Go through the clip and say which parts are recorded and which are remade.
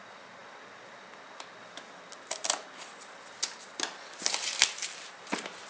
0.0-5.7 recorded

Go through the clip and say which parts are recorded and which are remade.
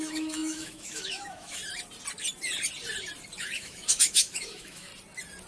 0.0-1.6 remade; 1.6-3.4 recorded; 3.4-4.9 remade; 4.9-5.5 recorded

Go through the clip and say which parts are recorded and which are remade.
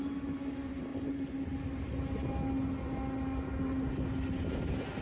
0.0-5.0 recorded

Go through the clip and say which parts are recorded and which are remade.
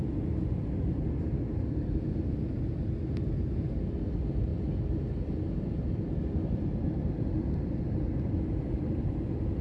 0.0-9.6 recorded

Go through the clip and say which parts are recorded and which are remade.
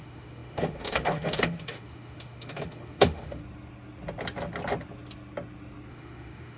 0.0-3.4 remade; 3.4-5.9 recorded; 5.9-6.6 remade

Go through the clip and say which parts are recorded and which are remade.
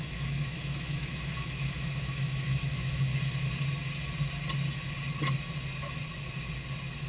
0.0-3.1 remade; 3.1-7.1 recorded